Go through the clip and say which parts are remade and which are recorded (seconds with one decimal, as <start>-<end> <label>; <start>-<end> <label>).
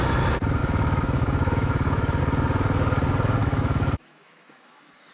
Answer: 0.0-0.6 recorded; 0.6-2.2 remade; 2.2-3.4 recorded; 3.4-5.1 remade